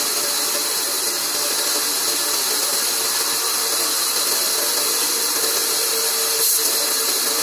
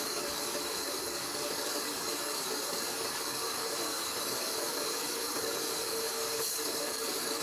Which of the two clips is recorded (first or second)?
first